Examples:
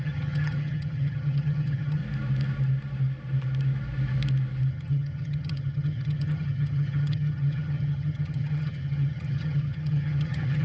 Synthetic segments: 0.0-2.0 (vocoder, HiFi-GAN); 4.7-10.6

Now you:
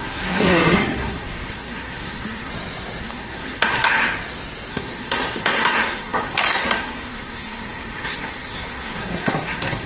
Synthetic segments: 0.0-2.5 (codec, SNAC); 3.0-4.0; 4.7-9.9

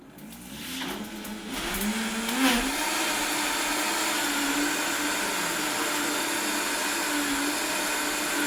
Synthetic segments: none